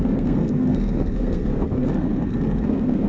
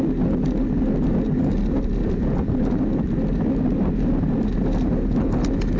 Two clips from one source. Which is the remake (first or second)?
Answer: first